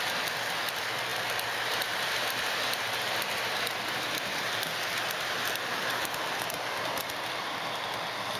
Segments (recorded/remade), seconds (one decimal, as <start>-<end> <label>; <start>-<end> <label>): 0.0-8.4 recorded